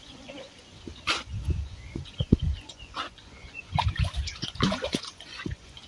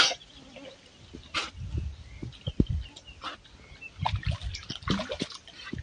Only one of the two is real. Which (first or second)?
second